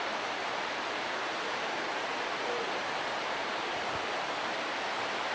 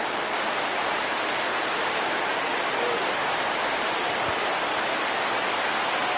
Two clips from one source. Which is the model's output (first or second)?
first